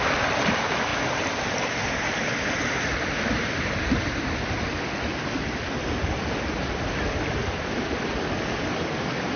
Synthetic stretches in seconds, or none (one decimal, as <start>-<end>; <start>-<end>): 6.6-8.1